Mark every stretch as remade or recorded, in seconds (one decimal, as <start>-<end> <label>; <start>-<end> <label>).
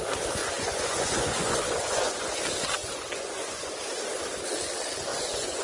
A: 0.0-0.4 recorded; 0.4-2.4 remade; 2.4-2.8 recorded; 2.8-3.7 remade; 3.7-5.1 recorded; 5.1-5.6 remade